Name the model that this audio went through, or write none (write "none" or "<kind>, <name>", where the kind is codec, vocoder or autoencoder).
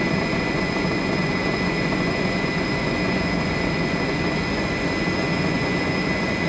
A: vocoder, Vocos